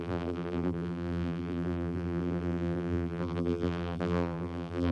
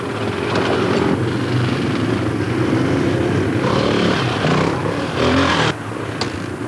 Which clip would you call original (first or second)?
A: second